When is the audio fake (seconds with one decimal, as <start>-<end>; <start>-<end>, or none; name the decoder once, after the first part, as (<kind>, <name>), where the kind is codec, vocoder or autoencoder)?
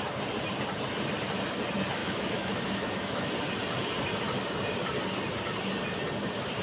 2.0-3.3 (autoencoder, DAC-VAE)